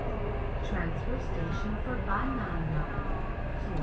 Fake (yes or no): no